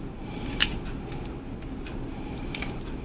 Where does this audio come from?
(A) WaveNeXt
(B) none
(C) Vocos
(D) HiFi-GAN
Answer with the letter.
B